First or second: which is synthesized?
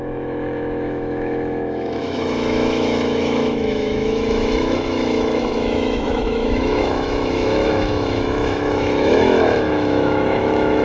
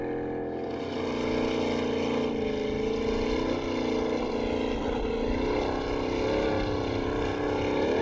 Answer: first